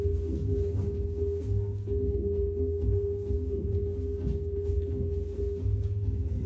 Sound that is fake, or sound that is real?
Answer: fake